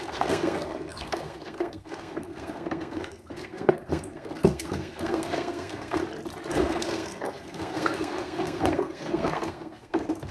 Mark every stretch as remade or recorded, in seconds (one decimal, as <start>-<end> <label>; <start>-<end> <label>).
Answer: 0.0-6.0 remade; 6.0-6.5 recorded; 6.5-10.3 remade